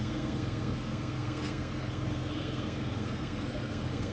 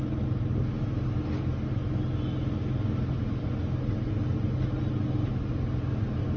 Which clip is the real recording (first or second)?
second